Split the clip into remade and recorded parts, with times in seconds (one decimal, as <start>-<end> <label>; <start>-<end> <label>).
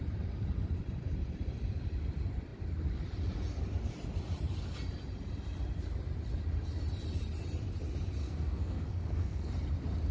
0.0-8.2 recorded; 8.2-9.5 remade; 9.5-10.1 recorded